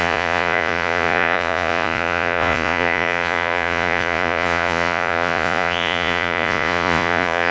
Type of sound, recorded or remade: remade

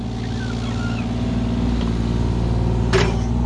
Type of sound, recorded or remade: recorded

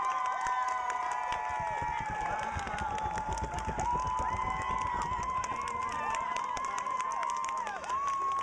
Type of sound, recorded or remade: recorded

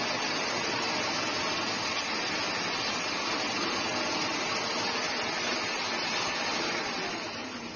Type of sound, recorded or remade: recorded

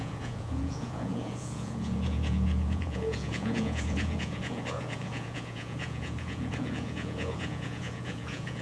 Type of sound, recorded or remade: remade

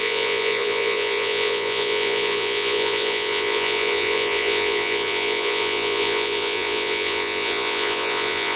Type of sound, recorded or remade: remade